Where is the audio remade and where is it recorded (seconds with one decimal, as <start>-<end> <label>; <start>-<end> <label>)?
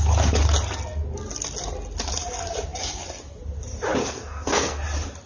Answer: 0.0-4.0 recorded; 4.0-4.8 remade; 4.8-5.3 recorded